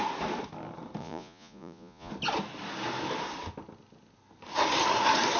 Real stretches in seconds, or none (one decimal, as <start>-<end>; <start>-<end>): 0.0-1.0; 2.1-5.4